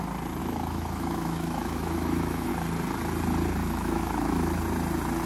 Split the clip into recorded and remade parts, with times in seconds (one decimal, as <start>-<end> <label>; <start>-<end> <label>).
0.0-0.4 recorded; 0.4-2.5 remade; 2.5-3.6 recorded; 3.6-4.6 remade; 4.6-5.3 recorded